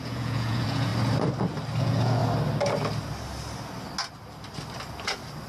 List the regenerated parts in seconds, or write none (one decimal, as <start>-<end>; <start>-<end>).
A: 0.0-0.9; 1.8-2.2